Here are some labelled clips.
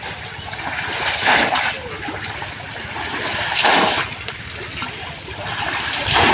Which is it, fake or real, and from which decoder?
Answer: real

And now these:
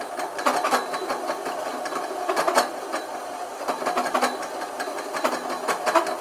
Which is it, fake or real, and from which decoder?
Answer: real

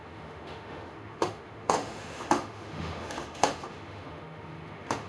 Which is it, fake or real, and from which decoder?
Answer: fake, autoencoder, DAC-VAE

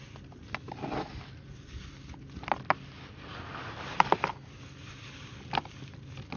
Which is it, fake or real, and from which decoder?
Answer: real